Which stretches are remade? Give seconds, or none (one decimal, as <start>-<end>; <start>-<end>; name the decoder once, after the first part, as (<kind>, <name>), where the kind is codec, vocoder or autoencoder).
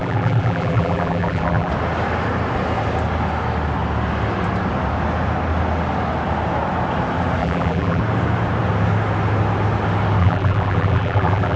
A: 0.0-1.7 (vocoder, BigVGAN v2); 7.4-8.0; 10.2-11.6